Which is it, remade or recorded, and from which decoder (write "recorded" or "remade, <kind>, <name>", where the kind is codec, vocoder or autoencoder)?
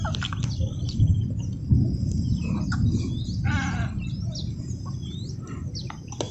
recorded